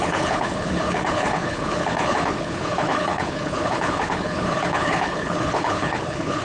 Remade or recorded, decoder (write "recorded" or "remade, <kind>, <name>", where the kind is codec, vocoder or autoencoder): remade, codec, HILCodec